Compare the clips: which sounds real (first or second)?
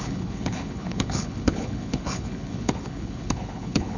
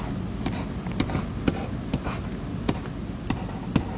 second